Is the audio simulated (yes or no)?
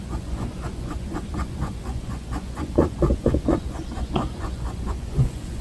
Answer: yes